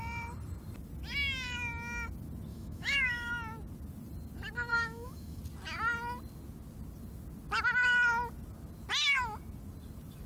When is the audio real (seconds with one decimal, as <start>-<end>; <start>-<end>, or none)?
0.0-2.5; 3.3-4.7; 5.4-10.3